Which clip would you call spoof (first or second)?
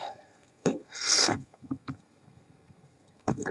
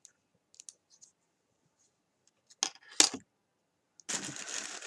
first